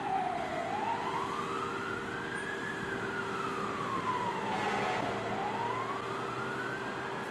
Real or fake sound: real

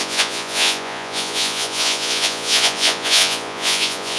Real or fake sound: fake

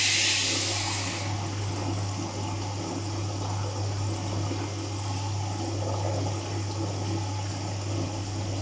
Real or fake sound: real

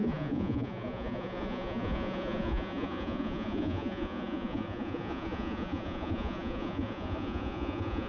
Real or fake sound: fake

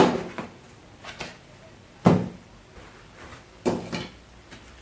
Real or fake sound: real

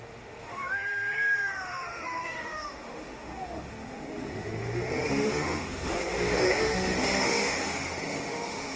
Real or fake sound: fake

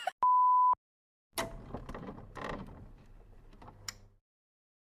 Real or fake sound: real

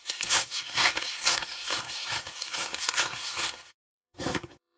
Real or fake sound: fake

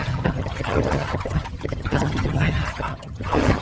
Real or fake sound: fake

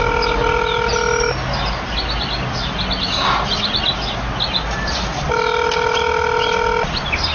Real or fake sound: real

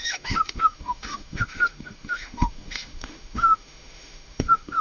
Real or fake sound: fake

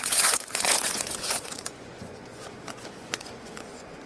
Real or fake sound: fake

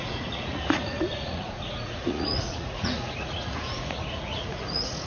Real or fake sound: fake